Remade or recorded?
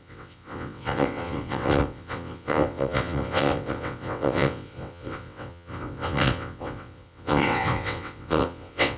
remade